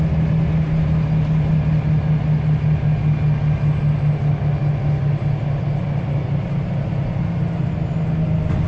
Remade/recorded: recorded